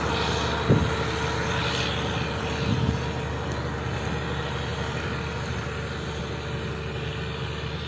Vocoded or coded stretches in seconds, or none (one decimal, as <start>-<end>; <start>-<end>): none